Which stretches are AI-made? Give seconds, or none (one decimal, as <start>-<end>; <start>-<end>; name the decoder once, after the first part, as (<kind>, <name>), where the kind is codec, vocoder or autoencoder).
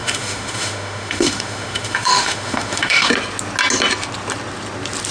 0.0-3.1 (autoencoder, DAC-VAE)